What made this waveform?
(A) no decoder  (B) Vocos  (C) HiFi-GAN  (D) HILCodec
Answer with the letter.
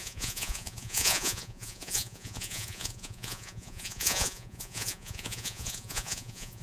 B